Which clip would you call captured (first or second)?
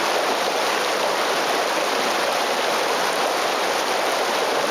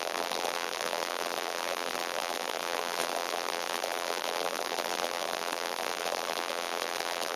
first